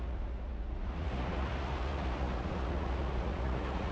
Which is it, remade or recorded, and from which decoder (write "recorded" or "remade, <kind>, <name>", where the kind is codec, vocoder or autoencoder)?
remade, vocoder, Vocos